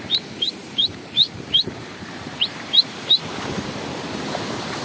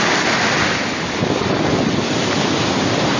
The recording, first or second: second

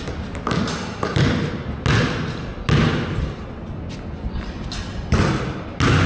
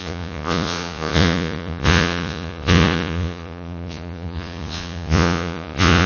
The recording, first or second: first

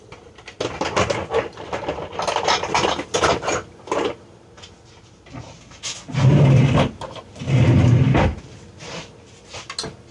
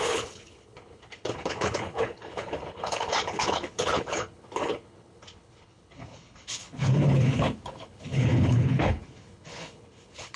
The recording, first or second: first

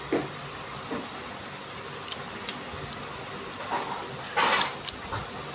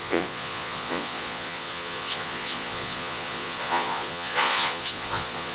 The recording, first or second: first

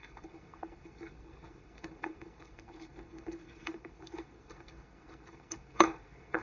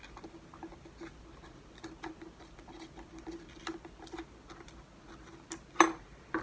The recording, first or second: second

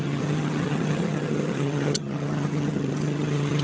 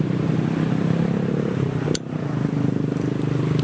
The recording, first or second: second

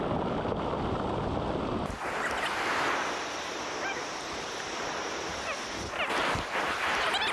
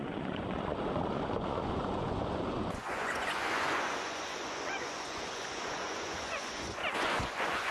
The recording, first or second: first